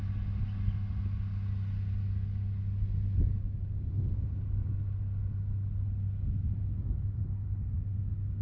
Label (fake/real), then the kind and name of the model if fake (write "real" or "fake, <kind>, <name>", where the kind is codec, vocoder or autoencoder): real